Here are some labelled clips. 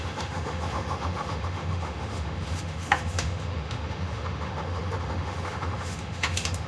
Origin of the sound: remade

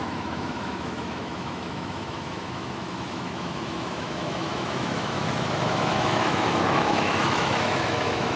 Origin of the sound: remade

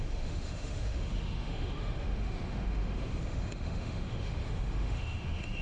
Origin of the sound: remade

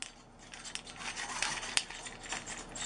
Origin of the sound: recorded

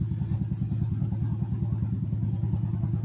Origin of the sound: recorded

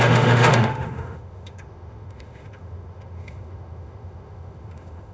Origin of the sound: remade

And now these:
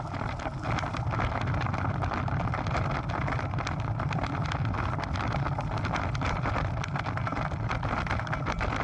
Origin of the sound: recorded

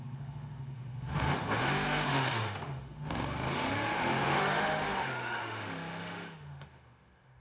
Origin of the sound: remade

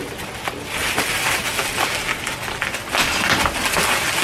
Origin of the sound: recorded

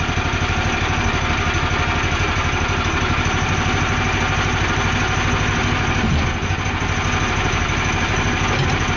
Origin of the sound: recorded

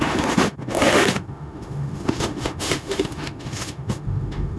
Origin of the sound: remade